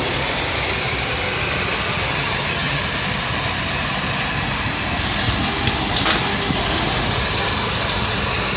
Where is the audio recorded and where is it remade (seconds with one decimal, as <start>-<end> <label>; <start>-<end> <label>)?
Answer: 0.0-2.1 recorded; 2.1-2.8 remade; 2.8-8.6 recorded